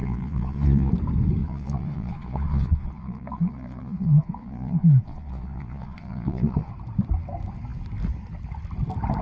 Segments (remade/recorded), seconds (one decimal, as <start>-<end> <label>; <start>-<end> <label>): 0.0-0.9 remade; 0.9-1.4 recorded; 1.4-6.7 remade; 6.7-9.2 recorded